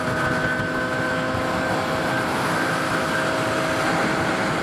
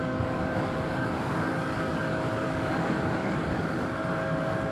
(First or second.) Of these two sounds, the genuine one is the first